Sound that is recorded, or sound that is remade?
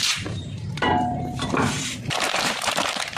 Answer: remade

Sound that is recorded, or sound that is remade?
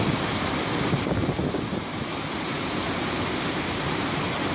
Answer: recorded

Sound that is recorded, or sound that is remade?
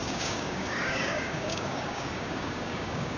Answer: remade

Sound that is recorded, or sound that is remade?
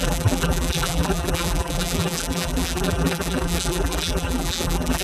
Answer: remade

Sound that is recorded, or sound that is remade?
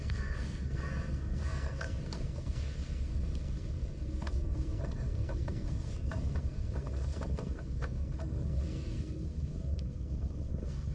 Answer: remade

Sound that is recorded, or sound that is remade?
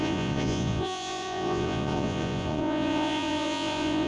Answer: remade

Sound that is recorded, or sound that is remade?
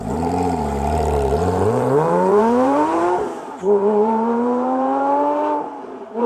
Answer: remade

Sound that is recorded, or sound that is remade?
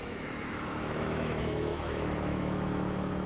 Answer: remade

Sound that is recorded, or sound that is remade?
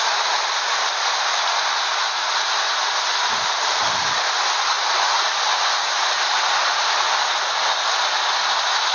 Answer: recorded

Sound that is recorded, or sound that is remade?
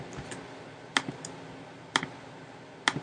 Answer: recorded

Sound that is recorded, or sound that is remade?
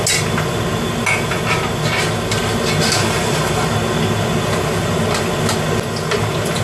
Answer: recorded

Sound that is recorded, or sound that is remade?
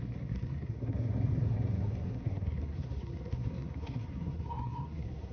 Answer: remade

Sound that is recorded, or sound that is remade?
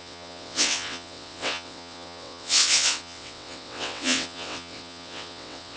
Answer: remade